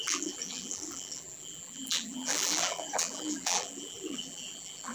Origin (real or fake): fake